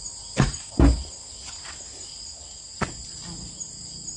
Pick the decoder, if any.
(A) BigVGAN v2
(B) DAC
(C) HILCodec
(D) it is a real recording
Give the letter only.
D